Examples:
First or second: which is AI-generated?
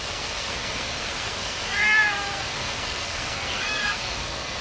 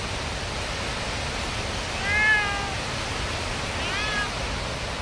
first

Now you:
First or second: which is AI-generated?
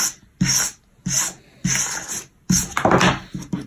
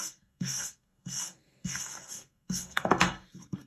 second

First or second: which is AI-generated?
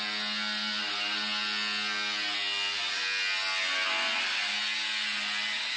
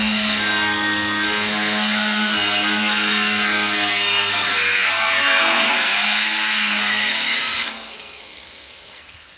second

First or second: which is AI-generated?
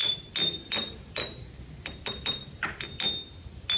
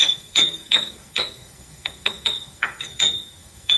second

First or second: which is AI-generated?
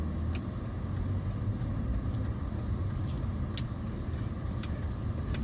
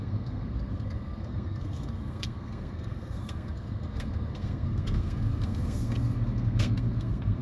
second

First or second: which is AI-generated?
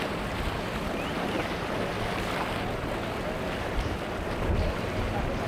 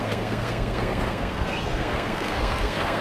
second